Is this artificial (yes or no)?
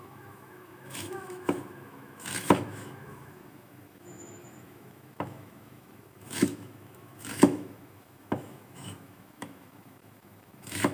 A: yes